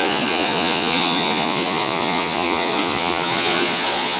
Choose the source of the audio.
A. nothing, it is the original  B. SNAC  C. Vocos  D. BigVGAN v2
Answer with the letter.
C